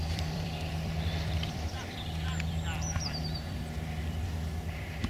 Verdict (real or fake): fake